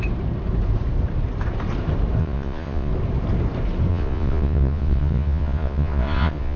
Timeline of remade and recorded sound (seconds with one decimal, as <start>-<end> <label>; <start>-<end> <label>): 0.0-2.2 recorded; 2.2-2.9 remade; 2.9-3.9 recorded; 3.9-6.6 remade